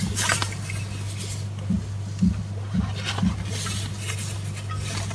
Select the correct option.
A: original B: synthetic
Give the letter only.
A